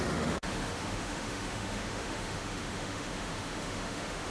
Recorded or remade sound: remade